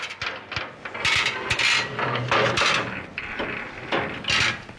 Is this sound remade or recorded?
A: recorded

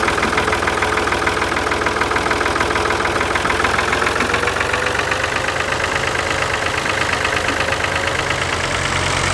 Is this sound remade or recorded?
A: recorded